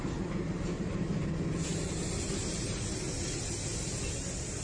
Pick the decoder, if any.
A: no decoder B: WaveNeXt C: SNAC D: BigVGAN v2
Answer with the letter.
A